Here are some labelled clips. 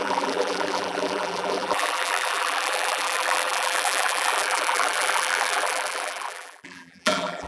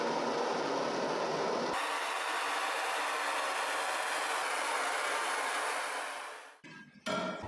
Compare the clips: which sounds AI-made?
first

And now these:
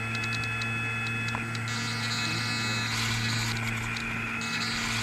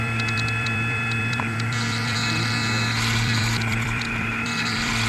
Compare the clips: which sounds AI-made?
second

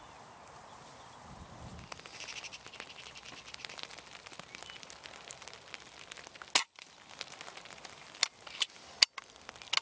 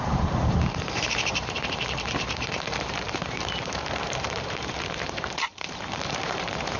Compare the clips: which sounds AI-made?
second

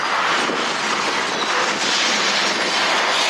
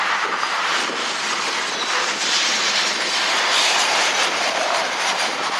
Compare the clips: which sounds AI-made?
second